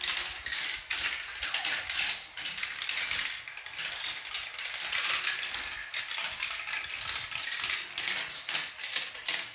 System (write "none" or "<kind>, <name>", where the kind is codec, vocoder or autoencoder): none